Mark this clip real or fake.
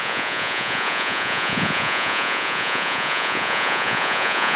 fake